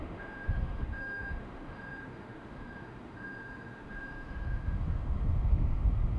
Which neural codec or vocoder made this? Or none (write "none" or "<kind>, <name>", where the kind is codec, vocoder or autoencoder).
autoencoder, DAC-VAE